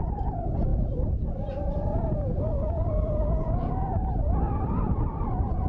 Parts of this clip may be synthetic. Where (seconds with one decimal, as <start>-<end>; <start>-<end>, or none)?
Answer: none